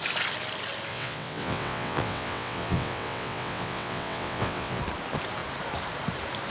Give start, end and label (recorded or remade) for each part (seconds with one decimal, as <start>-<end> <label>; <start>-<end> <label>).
0.0-0.9 recorded; 0.9-4.8 remade; 4.8-6.5 recorded